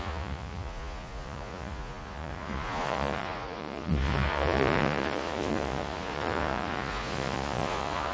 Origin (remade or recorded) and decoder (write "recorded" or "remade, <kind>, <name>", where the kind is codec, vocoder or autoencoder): remade, vocoder, Vocos